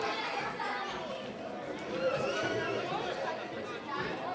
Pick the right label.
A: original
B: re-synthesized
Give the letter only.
A